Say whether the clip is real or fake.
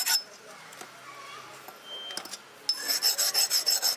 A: real